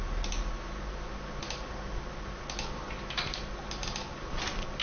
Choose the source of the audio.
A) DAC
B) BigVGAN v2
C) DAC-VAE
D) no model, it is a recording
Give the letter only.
D